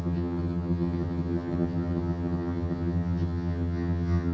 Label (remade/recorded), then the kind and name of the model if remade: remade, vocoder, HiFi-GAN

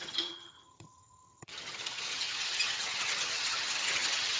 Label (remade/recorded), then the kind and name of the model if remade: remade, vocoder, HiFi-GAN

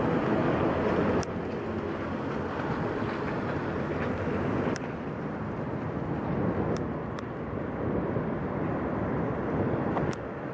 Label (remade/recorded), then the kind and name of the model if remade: recorded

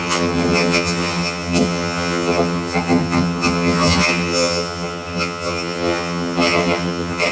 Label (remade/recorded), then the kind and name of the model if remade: remade, vocoder, HiFi-GAN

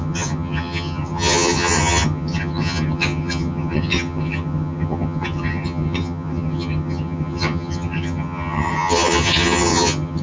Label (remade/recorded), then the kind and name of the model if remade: remade, vocoder, HiFi-GAN